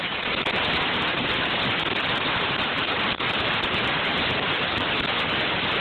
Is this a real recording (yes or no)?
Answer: yes